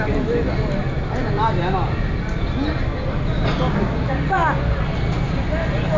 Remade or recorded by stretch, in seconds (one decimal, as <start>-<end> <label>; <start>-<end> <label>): 0.0-0.8 remade; 0.8-3.8 recorded; 3.8-4.4 remade; 4.4-6.0 recorded